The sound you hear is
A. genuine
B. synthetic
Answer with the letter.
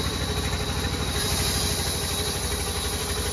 B